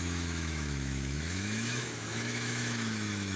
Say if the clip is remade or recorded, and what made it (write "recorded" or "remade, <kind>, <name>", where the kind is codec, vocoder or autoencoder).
remade, autoencoder, DAC-VAE